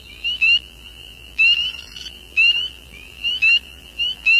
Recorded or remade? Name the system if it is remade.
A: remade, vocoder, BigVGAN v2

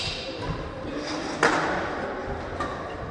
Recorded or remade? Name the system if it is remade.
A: recorded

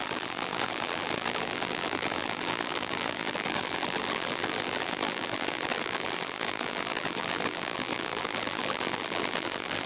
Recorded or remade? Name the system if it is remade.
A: remade, vocoder, BigVGAN v2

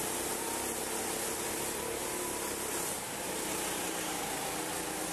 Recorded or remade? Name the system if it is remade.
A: recorded